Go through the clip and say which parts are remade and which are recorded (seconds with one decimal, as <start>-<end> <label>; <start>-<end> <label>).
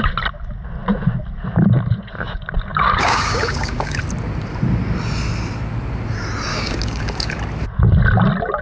0.0-2.7 recorded; 2.7-4.0 remade; 4.0-6.5 recorded; 6.5-7.4 remade; 7.4-8.6 recorded